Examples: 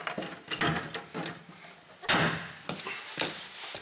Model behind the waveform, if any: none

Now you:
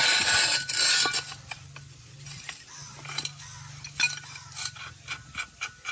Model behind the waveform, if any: none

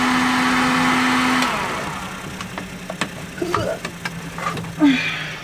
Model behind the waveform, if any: none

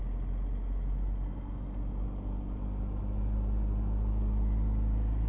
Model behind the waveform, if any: none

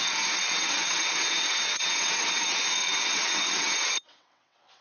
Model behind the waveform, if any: vocoder, WaveNeXt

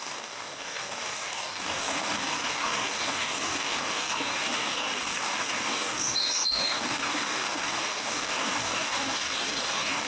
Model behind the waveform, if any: codec, DAC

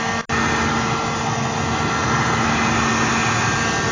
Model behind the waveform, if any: none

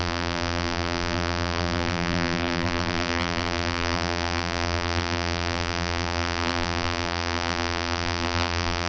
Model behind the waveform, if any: vocoder, BigVGAN v2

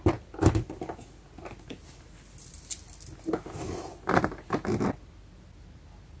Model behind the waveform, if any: none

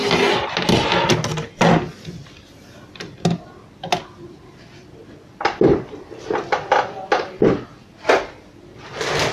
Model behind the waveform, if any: none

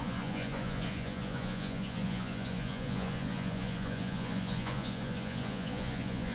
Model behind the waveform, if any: vocoder, Vocos